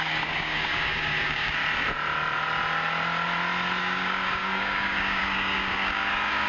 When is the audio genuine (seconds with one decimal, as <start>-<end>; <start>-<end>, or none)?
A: 1.6-3.8